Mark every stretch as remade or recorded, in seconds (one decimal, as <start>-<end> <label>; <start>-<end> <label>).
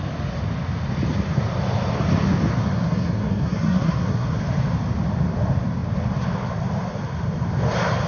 0.0-2.5 recorded; 2.5-4.4 remade; 4.4-8.1 recorded